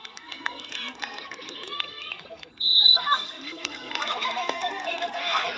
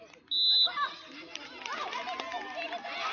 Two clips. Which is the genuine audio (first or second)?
second